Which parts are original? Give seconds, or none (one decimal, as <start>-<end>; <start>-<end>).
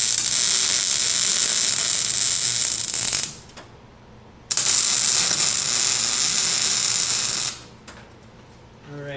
0.0-9.2